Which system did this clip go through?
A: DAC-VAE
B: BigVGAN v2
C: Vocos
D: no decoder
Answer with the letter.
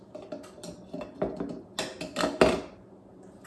D